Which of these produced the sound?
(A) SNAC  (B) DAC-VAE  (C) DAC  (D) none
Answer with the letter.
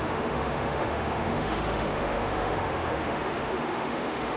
B